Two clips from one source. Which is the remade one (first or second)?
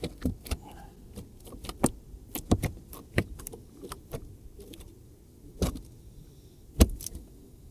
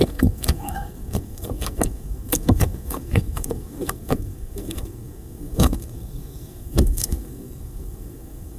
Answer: second